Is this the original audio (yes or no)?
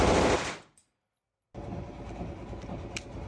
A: yes